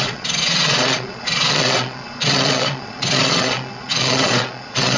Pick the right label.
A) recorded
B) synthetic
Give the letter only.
B